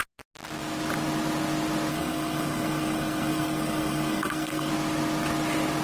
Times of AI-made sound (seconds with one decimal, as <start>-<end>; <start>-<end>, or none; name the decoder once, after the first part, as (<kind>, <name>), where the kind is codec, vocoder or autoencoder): 1.9-4.7 (codec, SNAC)